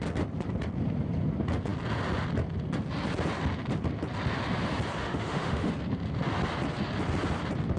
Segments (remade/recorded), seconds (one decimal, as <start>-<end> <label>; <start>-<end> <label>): 0.0-5.0 recorded; 5.0-5.7 remade; 5.7-7.8 recorded